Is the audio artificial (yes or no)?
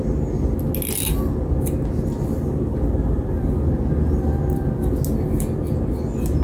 no